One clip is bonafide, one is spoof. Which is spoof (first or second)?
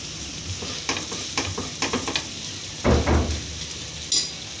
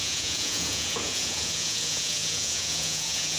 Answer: second